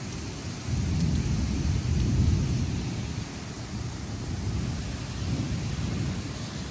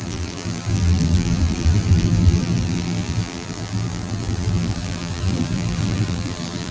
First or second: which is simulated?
second